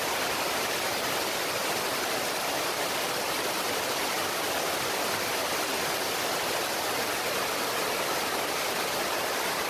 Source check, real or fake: fake